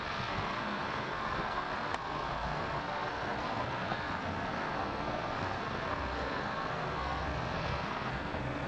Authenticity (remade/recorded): remade